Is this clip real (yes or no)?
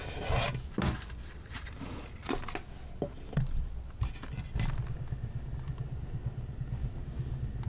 yes